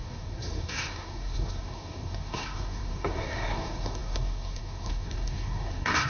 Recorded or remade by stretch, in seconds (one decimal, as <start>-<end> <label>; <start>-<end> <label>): 0.0-6.1 remade